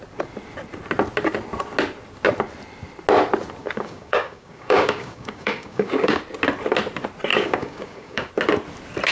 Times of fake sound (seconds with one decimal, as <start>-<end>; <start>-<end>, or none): 3.6-6.2; 7.3-8.3